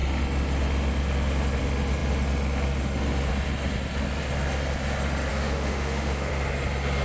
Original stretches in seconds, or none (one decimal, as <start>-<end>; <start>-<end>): 0.0-5.3; 6.3-7.0